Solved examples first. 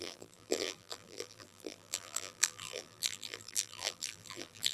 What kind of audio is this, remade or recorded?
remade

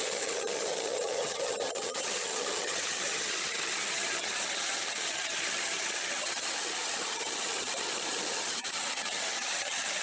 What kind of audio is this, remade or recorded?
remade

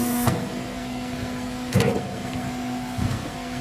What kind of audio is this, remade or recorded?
remade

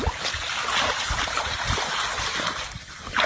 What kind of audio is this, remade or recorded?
recorded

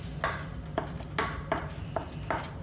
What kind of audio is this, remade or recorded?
recorded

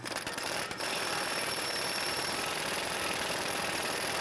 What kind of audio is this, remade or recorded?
remade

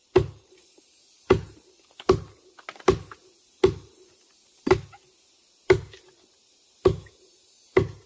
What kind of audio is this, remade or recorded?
recorded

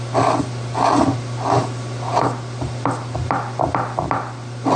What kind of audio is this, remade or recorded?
recorded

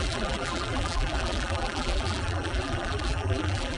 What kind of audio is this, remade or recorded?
remade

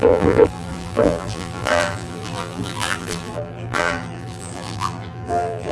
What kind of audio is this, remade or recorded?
remade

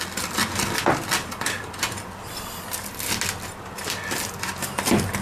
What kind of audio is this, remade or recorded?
recorded